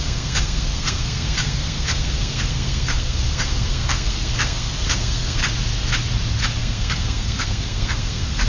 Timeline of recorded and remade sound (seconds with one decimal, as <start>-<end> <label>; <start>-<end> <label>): 0.0-5.4 remade; 5.4-6.6 recorded; 6.6-8.5 remade